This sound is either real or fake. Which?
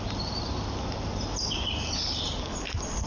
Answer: real